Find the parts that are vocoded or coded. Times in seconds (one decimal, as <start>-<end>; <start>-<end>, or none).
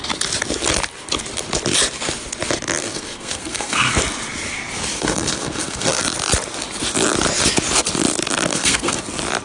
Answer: 2.8-3.9; 4.9-6.0; 8.5-9.0